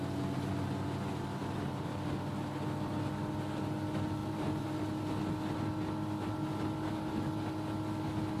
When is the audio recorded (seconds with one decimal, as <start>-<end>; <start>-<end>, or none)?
0.0-4.2; 4.8-8.4